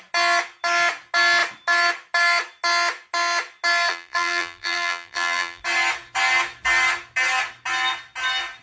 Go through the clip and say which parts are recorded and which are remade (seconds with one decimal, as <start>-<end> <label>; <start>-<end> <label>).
0.0-3.9 recorded; 3.9-5.6 remade; 5.6-8.6 recorded